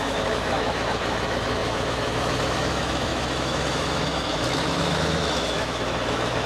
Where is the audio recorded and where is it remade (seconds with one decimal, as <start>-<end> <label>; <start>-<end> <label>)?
0.0-6.5 remade